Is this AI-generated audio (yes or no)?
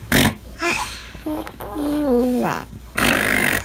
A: yes